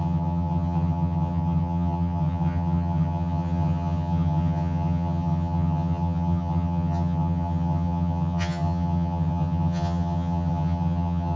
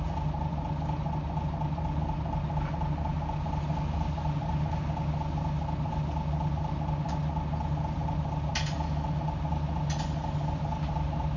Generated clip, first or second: first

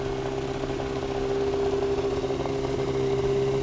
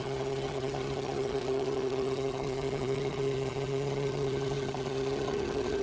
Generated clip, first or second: second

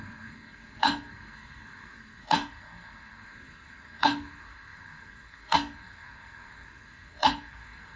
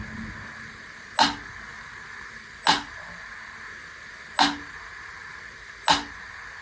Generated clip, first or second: first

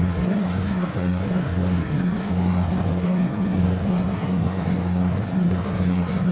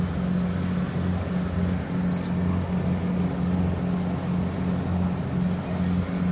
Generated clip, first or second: first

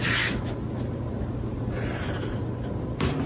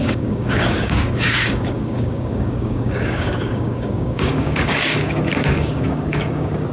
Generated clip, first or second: second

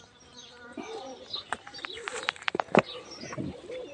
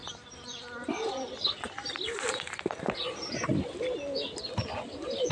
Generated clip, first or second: first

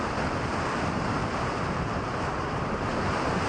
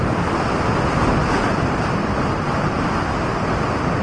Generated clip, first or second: first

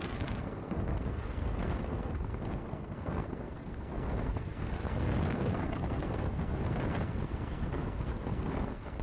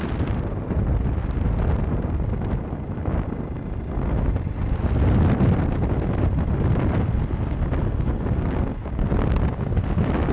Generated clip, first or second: first